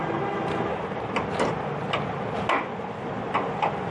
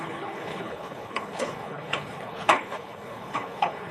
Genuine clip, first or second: first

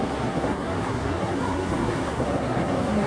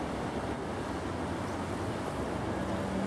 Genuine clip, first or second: second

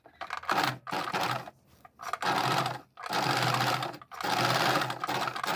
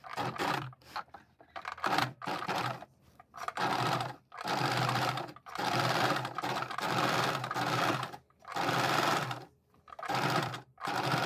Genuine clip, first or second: first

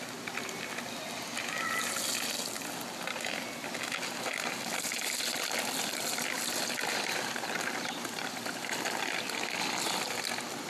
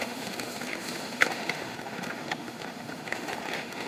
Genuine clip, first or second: first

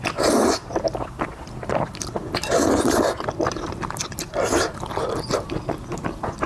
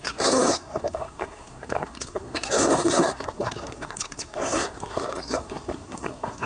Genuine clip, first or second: first